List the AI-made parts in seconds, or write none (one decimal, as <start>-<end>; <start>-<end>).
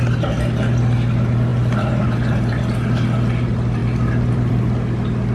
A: 1.5-2.5; 3.8-4.5